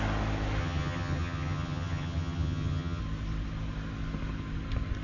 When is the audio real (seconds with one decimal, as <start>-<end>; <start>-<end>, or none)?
0.0-0.6; 3.0-5.0